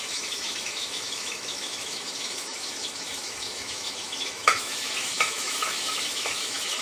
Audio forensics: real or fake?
fake